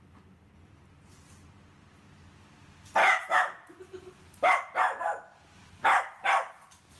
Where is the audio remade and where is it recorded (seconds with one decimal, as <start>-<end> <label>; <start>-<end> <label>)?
0.0-3.0 recorded; 3.0-3.8 remade; 3.8-7.0 recorded